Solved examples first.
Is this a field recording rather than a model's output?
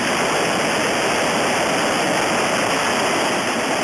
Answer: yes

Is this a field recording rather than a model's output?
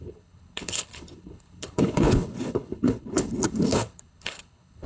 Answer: no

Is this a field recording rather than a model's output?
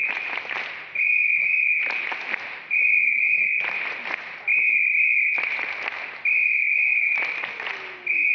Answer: yes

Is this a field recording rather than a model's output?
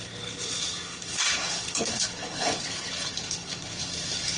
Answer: no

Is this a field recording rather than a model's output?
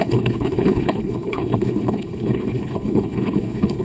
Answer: no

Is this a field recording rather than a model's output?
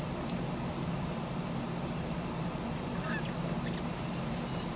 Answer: yes